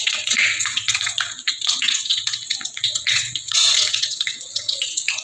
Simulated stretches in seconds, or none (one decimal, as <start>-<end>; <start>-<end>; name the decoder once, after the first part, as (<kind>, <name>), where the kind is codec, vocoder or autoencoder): 0.0-5.2 (vocoder, WaveNeXt)